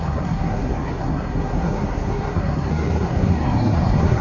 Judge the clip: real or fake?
fake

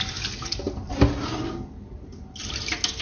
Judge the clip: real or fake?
real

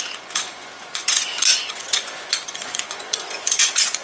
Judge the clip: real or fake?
fake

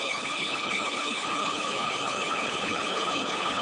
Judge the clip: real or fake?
fake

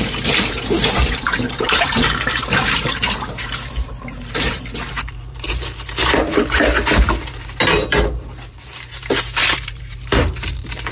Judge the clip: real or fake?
fake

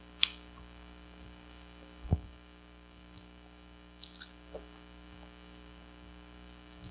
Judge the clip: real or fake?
fake